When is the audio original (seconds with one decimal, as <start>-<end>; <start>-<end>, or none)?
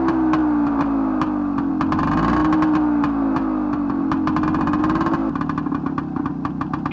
0.0-6.9